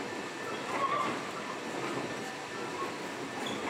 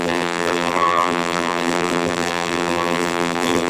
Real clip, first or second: first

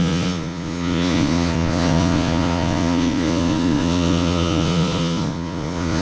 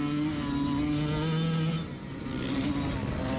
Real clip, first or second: second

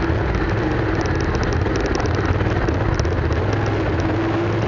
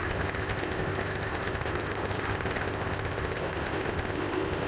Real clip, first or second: first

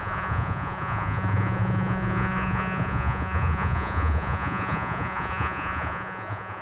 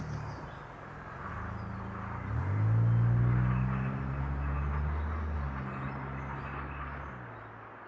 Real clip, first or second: second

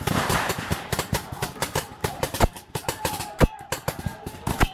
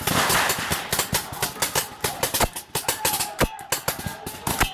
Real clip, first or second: second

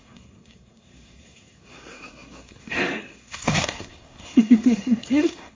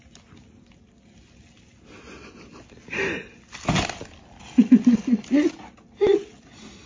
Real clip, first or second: second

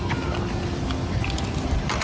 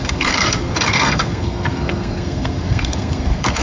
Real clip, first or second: first